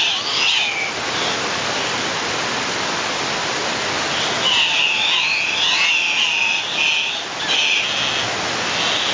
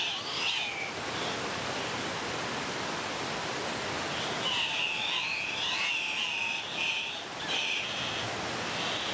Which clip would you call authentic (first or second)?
first